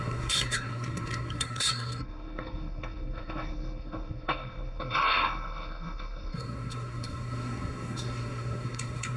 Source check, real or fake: fake